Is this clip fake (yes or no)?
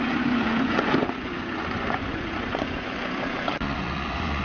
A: yes